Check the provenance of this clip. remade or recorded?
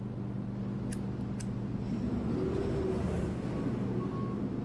recorded